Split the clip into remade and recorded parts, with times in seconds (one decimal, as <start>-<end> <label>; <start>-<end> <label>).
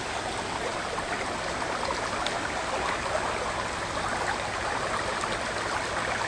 0.0-6.3 recorded